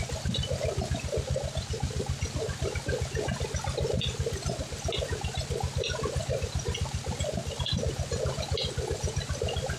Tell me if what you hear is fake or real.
real